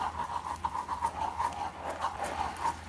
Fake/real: real